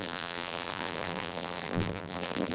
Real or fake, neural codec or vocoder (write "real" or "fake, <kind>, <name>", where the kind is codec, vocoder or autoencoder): fake, vocoder, BigVGAN v2